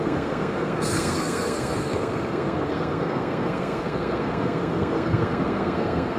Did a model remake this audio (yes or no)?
yes